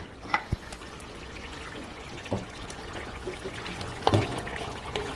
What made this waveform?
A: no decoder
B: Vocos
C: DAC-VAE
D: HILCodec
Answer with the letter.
B